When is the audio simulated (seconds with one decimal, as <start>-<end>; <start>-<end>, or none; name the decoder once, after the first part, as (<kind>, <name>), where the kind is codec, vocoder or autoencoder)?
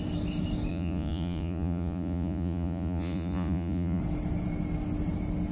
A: 0.7-4.0 (vocoder, Vocos)